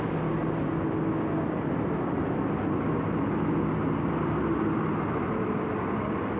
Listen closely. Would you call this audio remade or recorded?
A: recorded